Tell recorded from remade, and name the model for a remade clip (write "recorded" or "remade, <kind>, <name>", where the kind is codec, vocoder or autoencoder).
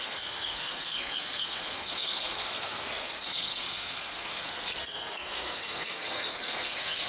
remade, codec, SNAC